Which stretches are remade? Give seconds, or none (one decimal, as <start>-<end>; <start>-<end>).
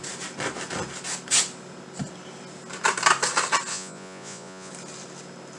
3.7-4.7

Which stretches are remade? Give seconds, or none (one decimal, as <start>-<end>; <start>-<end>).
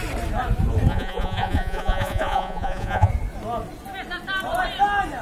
0.9-3.1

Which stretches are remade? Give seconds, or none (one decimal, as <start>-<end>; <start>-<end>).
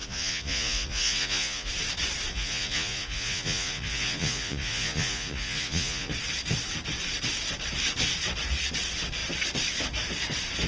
0.0-1.7; 2.3-6.1